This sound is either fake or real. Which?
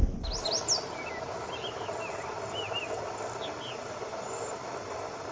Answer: real